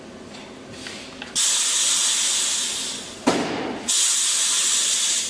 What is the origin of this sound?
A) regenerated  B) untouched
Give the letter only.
B